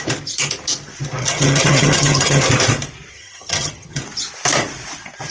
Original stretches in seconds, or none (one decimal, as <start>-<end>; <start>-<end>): 0.0-1.2; 2.4-3.1; 4.0-5.3